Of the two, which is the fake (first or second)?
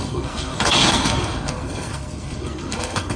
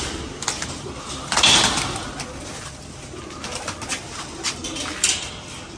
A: first